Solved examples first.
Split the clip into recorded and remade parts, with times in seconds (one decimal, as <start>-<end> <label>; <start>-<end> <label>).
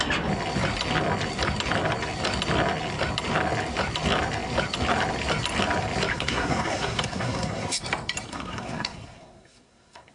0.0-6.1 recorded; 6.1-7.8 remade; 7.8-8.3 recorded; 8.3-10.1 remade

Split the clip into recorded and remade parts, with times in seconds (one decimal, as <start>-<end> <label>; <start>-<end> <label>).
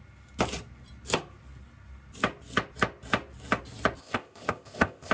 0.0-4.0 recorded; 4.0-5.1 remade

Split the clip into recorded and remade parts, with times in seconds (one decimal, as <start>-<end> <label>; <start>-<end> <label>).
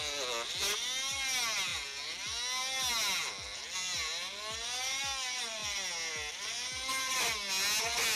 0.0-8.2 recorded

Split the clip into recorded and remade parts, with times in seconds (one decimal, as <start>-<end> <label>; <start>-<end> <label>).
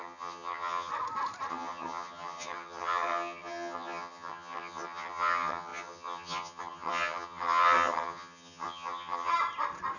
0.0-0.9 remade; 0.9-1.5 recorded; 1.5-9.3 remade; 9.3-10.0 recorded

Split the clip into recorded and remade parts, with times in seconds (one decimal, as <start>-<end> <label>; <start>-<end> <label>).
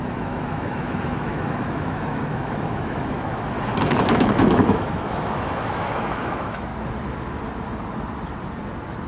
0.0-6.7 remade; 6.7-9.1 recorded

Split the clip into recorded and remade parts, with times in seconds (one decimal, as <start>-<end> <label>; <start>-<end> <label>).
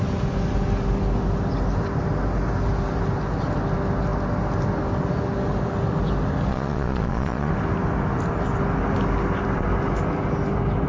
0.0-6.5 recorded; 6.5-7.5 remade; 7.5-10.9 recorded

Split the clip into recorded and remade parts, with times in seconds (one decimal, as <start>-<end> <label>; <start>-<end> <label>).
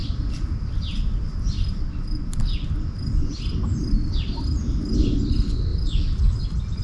0.0-5.7 remade; 5.7-6.8 recorded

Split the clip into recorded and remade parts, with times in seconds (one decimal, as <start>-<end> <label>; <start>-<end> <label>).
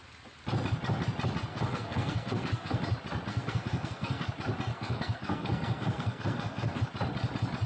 0.0-1.5 recorded; 1.5-2.8 remade; 2.8-3.3 recorded; 3.3-4.3 remade; 4.3-4.7 recorded; 4.7-6.8 remade; 6.8-7.7 recorded